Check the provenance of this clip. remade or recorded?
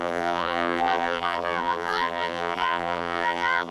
remade